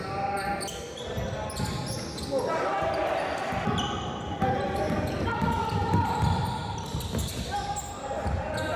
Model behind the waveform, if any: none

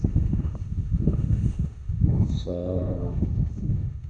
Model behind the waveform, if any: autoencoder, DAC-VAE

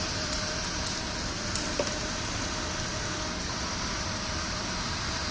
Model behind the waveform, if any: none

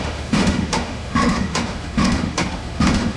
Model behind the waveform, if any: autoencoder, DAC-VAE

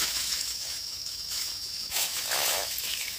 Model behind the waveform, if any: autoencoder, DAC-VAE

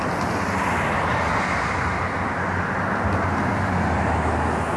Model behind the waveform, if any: none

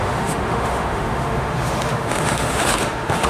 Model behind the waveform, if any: autoencoder, DAC-VAE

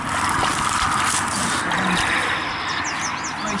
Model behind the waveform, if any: none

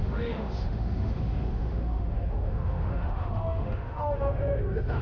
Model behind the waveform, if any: autoencoder, DAC-VAE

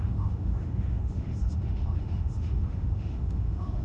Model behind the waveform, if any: autoencoder, DAC-VAE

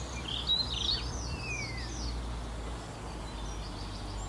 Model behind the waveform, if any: none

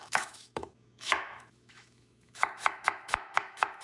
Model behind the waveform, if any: autoencoder, DAC-VAE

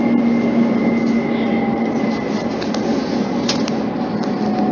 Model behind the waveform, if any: none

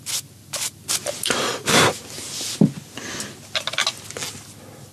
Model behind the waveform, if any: none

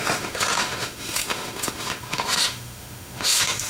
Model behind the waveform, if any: autoencoder, DAC-VAE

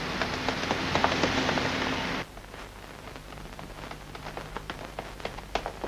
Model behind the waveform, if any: none